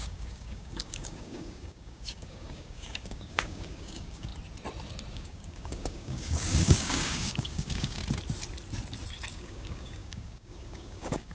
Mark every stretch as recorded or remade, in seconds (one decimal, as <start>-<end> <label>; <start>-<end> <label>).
0.0-4.3 remade; 4.3-5.1 recorded; 5.1-8.0 remade; 8.0-9.3 recorded; 9.3-11.3 remade